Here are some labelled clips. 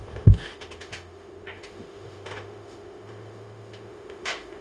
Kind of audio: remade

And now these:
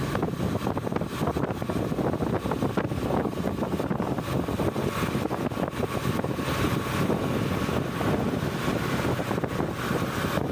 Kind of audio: recorded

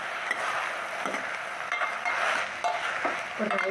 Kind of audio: recorded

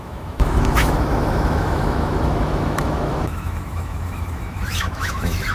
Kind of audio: remade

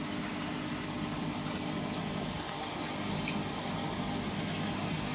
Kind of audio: recorded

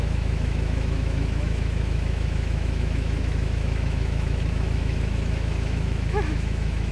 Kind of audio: remade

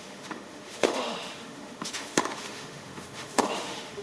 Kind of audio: remade